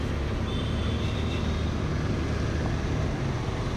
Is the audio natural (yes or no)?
yes